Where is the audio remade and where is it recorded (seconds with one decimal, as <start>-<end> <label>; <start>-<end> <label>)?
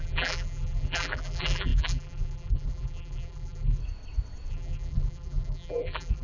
0.0-3.8 remade; 3.8-4.5 recorded; 4.5-6.2 remade